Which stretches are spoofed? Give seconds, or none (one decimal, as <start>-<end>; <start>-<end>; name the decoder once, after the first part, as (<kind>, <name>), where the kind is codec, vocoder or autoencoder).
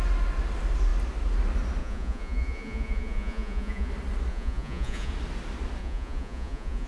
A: 1.8-3.9 (vocoder, Vocos); 4.3-5.1; 5.8-6.9